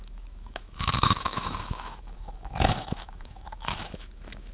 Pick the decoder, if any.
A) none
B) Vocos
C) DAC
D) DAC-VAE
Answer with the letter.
D